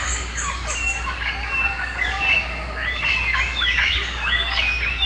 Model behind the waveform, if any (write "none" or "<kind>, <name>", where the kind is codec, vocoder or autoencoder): codec, DAC